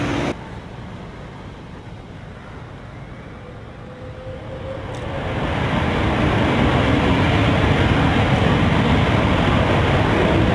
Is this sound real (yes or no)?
yes